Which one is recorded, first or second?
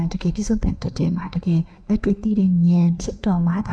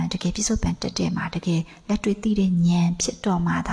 second